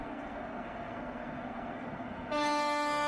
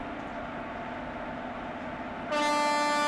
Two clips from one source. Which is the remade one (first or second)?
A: first